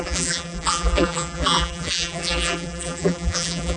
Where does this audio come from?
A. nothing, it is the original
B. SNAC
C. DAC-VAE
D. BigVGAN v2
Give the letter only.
D